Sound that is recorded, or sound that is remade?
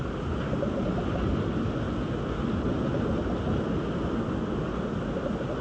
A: recorded